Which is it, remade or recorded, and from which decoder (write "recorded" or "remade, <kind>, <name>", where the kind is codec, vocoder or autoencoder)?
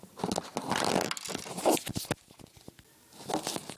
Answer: recorded